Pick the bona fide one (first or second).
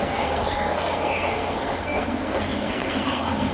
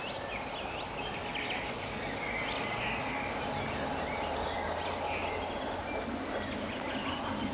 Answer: second